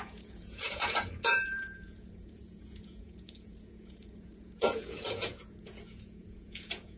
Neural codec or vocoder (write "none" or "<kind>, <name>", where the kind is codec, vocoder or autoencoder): vocoder, Vocos